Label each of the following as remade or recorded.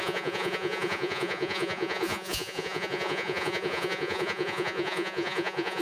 remade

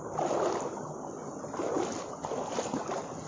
recorded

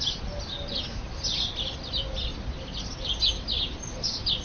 recorded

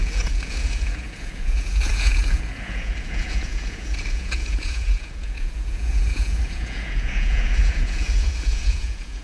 remade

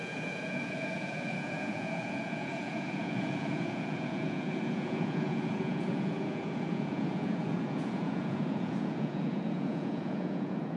remade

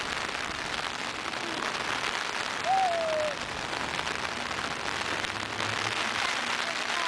recorded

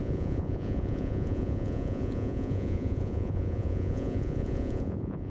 remade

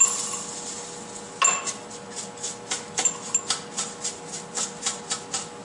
recorded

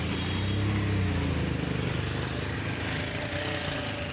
recorded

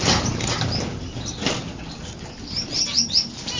recorded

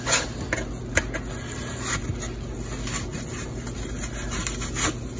recorded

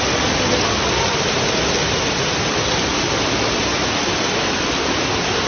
recorded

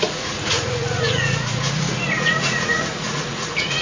remade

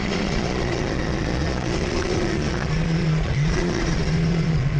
remade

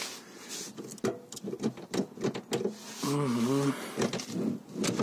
recorded